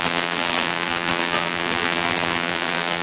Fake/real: fake